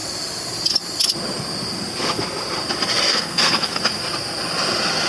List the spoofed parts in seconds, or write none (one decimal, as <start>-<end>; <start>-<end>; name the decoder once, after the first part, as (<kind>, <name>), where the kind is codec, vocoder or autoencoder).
3.1-3.8 (codec, SNAC)